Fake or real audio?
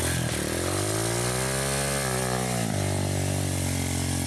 real